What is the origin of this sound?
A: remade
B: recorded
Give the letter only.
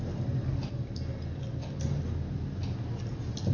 B